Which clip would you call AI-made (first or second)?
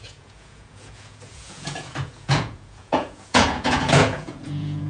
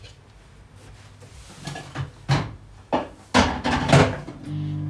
first